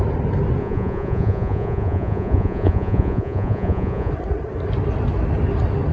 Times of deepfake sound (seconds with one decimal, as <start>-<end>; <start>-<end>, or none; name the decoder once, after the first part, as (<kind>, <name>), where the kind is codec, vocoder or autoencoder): 0.6-4.1 (vocoder, Vocos)